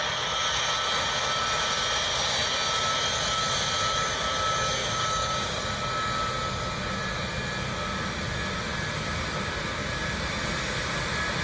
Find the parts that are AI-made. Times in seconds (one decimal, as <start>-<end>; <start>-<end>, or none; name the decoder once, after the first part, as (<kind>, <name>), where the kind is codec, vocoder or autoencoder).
4.8-5.6 (codec, DAC)